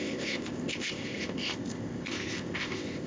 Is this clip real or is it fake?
fake